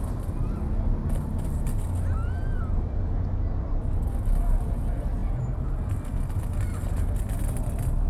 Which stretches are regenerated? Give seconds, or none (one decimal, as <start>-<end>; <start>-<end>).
none